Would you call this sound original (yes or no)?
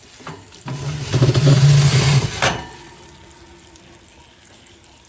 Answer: yes